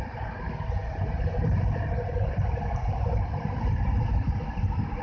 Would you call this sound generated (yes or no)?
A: yes